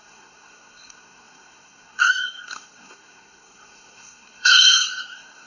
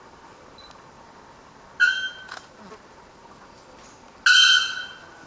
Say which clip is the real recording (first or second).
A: second